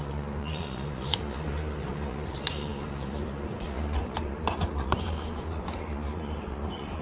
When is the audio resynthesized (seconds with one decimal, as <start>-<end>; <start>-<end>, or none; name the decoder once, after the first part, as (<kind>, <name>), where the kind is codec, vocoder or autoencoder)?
0.0-7.0 (vocoder, Vocos)